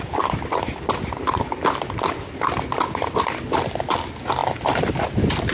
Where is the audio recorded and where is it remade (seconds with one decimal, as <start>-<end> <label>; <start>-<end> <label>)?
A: 0.0-5.5 recorded